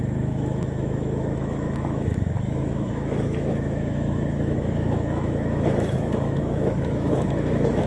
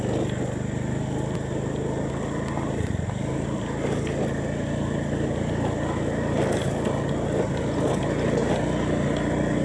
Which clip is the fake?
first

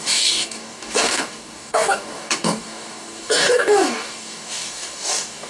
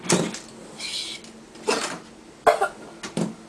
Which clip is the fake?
first